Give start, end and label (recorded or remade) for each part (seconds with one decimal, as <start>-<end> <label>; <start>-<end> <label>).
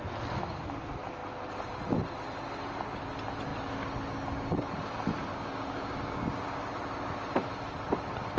0.0-5.3 recorded; 5.3-6.7 remade; 6.7-8.4 recorded